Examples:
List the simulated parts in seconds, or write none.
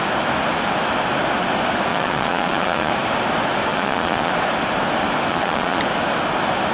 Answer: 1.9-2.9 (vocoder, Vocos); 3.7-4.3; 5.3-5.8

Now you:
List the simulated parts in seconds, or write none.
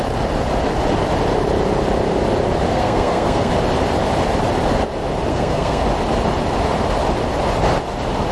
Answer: 2.7-3.5 (codec, SNAC); 5.3-5.8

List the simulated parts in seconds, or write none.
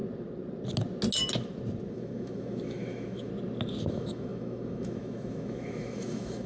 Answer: 1.9-3.3 (autoencoder, DAC-VAE); 3.9-6.5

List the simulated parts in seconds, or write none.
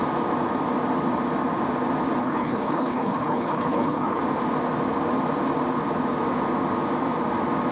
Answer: 2.2-4.2 (codec, HILCodec)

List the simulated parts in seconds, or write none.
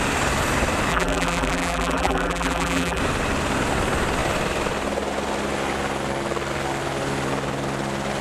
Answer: 0.9-3.0 (vocoder, BigVGAN v2)